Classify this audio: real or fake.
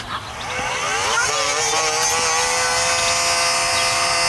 real